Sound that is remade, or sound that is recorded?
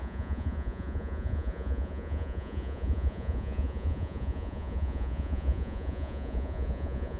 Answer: remade